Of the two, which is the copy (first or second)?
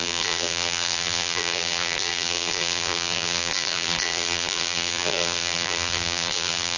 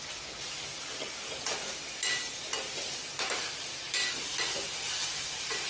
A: first